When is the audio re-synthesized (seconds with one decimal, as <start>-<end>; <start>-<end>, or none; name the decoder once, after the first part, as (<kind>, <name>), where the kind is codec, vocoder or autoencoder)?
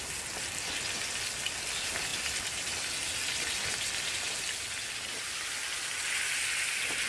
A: none